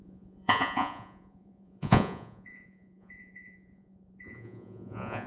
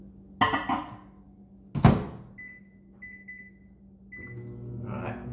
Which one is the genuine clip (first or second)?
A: second